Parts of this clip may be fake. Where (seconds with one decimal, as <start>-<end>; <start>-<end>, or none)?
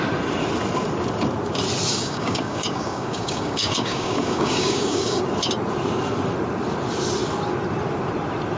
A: 1.9-5.2